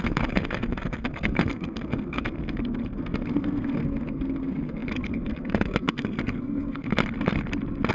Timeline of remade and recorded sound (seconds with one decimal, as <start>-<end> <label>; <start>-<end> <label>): 0.0-7.0 remade; 7.0-7.9 recorded